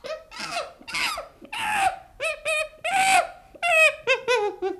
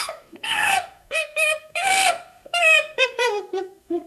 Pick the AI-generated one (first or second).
second